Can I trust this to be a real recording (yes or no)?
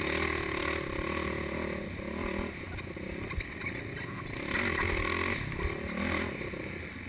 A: yes